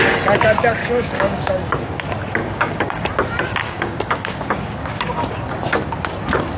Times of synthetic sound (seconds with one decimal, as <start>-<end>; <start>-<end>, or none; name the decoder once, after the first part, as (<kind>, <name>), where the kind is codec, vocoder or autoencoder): 0.8-1.5 (codec, DAC); 2.4-3.1; 3.6-5.2